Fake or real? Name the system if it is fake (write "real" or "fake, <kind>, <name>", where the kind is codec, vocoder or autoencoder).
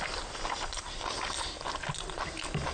real